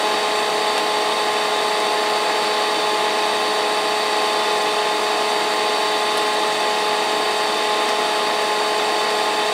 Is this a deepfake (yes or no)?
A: no